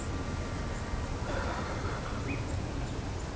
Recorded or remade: recorded